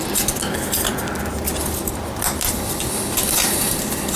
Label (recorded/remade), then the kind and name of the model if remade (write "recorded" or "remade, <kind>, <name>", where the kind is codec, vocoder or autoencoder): recorded